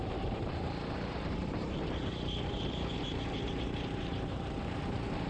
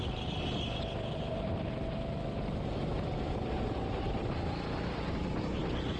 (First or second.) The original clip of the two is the second